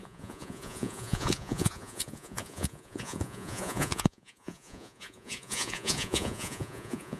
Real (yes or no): no